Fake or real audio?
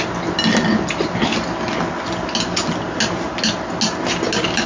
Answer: real